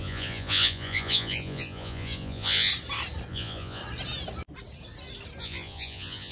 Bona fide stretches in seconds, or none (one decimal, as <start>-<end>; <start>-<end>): 2.7-3.3; 3.8-5.4